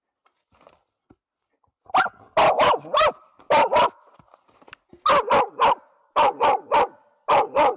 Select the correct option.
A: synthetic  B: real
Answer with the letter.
B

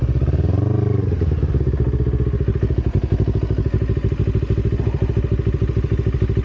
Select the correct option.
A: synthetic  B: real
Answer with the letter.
B